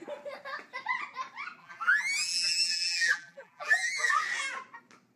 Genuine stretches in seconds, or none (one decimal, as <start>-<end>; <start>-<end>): 0.0-1.6; 4.1-5.2

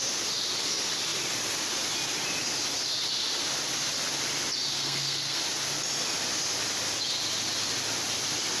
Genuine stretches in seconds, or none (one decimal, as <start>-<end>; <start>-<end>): 0.0-4.7; 5.4-8.6

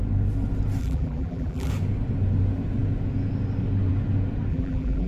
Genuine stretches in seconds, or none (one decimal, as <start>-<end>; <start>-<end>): 0.0-0.8; 1.7-4.5

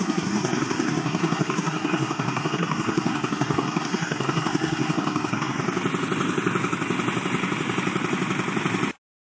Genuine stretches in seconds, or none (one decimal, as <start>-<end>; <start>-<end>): 5.6-9.2